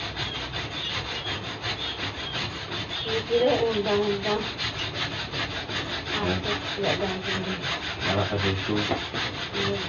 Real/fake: real